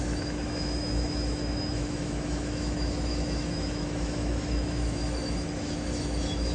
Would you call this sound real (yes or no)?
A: no